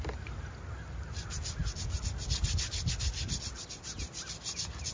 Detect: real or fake real